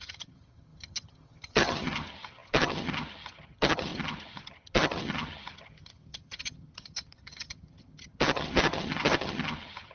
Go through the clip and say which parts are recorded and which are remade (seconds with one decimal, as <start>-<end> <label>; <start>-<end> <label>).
0.0-9.9 remade